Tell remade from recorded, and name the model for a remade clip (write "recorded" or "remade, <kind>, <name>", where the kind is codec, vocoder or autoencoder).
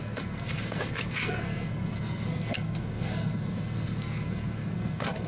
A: remade, codec, SNAC